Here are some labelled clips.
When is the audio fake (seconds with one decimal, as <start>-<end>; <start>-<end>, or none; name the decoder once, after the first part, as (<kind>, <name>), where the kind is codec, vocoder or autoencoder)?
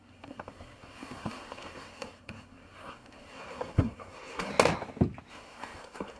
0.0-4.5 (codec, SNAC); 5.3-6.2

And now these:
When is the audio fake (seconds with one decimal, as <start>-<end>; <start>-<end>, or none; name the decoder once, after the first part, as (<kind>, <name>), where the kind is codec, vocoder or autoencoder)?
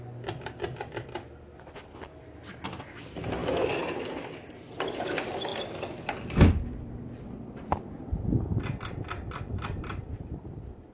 none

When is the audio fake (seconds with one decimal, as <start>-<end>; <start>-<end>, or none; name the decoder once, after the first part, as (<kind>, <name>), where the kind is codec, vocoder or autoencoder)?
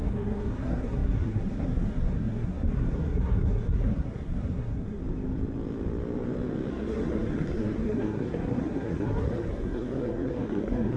0.0-5.0 (codec, SNAC); 6.7-11.0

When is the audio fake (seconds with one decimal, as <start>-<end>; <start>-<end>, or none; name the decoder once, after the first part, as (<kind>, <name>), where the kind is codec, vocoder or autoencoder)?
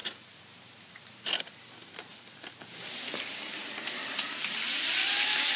0.9-5.6 (vocoder, BigVGAN v2)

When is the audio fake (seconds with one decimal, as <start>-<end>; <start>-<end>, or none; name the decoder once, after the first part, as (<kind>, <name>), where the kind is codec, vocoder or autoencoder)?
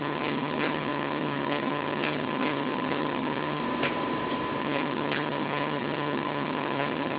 0.0-3.6 (vocoder, HiFi-GAN); 4.6-7.2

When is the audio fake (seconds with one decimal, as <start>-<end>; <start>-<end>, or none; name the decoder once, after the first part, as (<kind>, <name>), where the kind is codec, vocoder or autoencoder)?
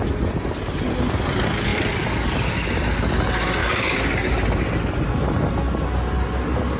1.7-3.1 (vocoder, BigVGAN v2)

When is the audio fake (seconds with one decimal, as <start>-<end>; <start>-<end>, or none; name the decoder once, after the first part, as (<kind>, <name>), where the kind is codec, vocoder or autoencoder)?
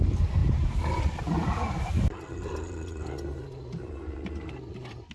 0.4-1.1 (vocoder, BigVGAN v2); 3.3-4.5